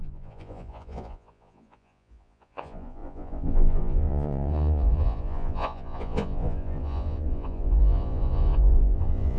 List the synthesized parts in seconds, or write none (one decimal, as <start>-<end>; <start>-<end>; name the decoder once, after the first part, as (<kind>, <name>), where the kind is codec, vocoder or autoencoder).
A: 0.0-9.4 (vocoder, Vocos)